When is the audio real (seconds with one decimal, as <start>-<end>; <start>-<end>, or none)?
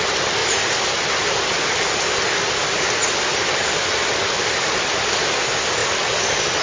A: 0.0-0.4; 4.4-5.8